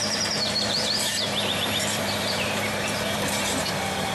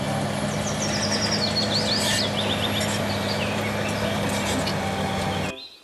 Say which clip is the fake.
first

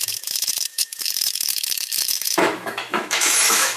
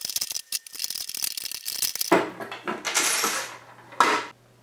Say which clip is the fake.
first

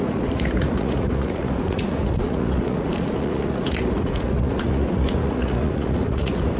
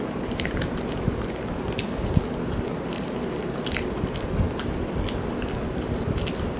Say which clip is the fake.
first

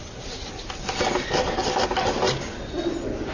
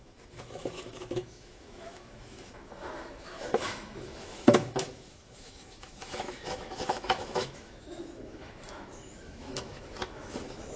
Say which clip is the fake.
second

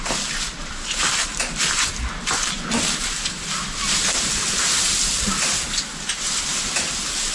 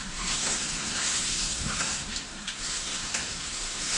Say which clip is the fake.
second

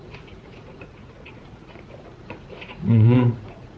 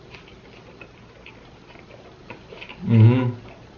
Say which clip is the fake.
first